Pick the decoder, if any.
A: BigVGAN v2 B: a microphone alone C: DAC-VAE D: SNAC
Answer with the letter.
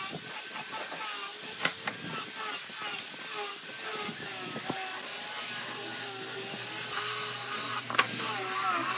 B